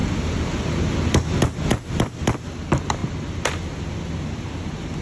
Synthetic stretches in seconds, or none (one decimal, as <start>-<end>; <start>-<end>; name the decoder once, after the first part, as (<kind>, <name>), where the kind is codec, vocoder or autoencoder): none